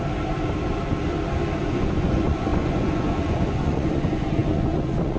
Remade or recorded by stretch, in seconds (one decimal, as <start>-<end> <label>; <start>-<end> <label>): 0.0-1.6 recorded; 1.6-5.2 remade

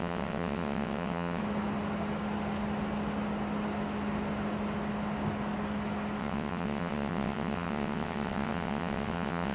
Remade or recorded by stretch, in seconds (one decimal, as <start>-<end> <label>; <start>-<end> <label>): 0.0-1.4 remade; 1.4-6.2 recorded; 6.2-9.5 remade

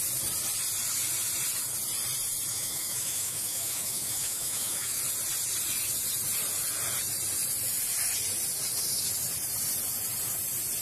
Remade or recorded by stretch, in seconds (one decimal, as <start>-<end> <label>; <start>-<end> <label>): 0.0-2.5 recorded; 2.5-5.0 remade; 5.0-10.8 recorded

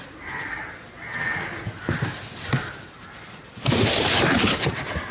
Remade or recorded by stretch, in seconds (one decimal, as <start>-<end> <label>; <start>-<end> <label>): 0.0-0.6 remade; 0.6-3.7 recorded; 3.7-5.1 remade

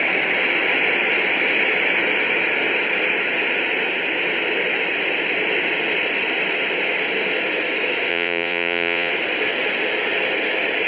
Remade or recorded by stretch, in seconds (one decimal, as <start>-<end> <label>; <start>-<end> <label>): 0.0-8.1 recorded; 8.1-9.1 remade; 9.1-10.9 recorded

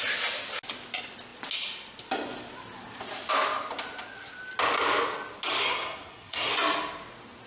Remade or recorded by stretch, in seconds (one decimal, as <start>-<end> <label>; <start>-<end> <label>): 0.0-5.6 recorded; 5.6-6.5 remade; 6.5-7.5 recorded

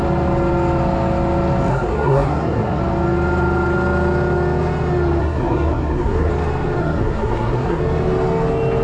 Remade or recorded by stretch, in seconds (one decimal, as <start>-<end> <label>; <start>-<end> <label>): 0.0-1.7 recorded; 1.7-2.8 remade; 2.8-5.2 recorded; 5.2-6.3 remade; 6.3-6.8 recorded; 6.8-7.8 remade; 7.8-8.8 recorded